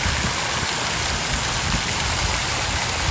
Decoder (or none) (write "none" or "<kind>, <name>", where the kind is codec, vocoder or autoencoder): none